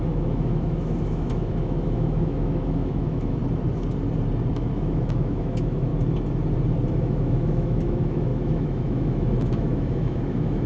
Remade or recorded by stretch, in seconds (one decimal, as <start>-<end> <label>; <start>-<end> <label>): 0.0-3.4 remade; 3.4-4.5 recorded; 4.5-5.9 remade; 5.9-7.0 recorded; 7.0-10.7 remade